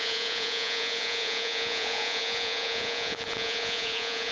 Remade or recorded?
remade